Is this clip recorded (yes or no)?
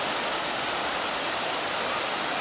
yes